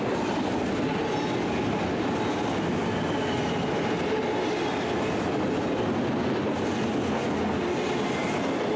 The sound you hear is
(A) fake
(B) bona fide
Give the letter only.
B